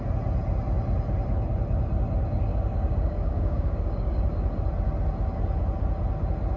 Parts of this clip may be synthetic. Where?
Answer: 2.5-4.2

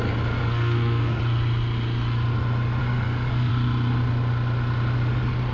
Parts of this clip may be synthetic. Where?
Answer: 0.4-1.2; 2.8-3.5